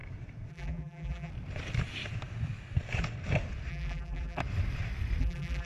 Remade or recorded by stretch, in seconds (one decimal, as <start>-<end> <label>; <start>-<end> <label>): 0.0-0.5 recorded; 0.5-1.3 remade; 1.3-3.7 recorded; 3.7-4.4 remade; 4.4-5.2 recorded; 5.2-5.7 remade